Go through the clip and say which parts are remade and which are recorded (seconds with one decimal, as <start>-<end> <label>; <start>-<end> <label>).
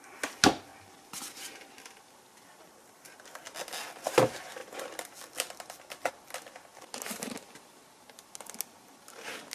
0.0-0.7 recorded; 0.7-2.1 remade; 2.1-9.5 recorded